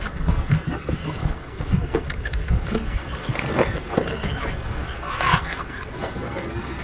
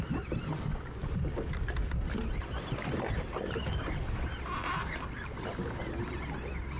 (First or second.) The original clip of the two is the second